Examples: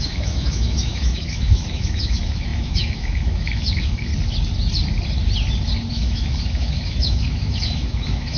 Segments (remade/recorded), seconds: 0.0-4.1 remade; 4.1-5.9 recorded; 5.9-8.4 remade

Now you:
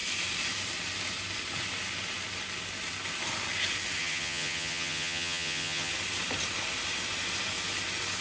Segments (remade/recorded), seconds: 0.0-4.0 recorded; 4.0-5.9 remade; 5.9-8.2 recorded

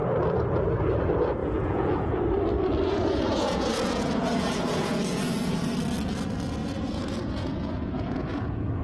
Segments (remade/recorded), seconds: 0.0-1.4 recorded; 1.4-2.1 remade; 2.1-2.9 recorded; 2.9-5.5 remade; 5.5-6.6 recorded; 6.6-8.8 remade